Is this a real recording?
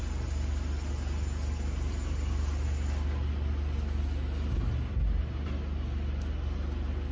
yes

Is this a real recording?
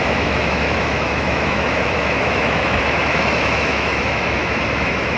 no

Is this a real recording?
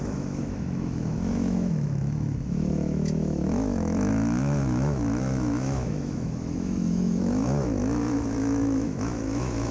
no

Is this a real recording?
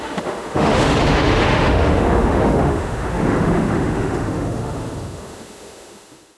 no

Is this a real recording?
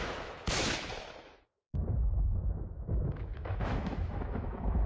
no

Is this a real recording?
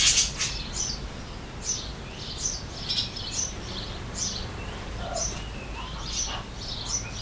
yes